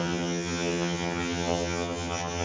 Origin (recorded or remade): remade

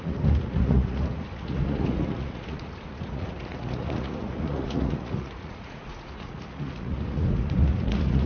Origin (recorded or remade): remade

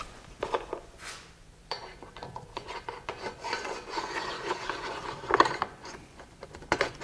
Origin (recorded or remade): remade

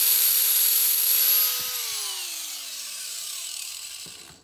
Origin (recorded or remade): remade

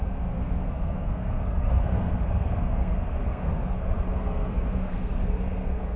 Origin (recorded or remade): remade